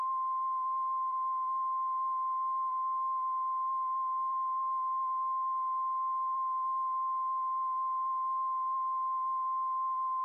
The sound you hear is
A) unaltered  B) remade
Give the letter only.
B